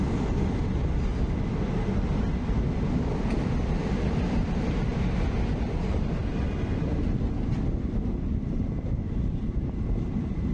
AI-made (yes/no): no